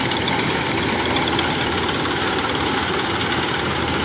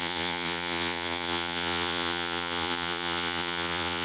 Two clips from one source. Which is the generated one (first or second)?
second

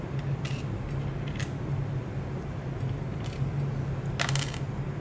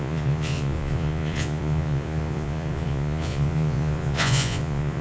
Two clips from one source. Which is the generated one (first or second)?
second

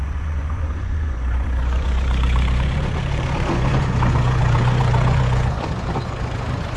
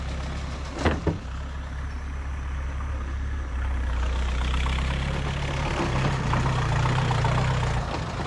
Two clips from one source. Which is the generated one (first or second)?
first